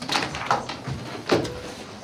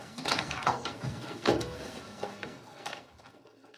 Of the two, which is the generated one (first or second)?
second